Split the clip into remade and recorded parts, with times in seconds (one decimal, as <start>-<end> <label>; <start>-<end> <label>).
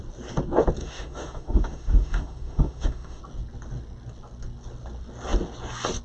0.0-0.8 recorded; 0.8-3.2 remade; 3.2-6.0 recorded